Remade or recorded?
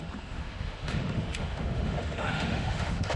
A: remade